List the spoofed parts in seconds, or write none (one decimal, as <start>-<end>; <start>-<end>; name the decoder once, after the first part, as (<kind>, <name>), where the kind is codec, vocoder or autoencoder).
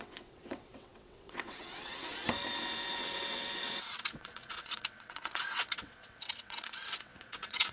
0.0-2.1 (vocoder, WaveNeXt); 2.9-7.7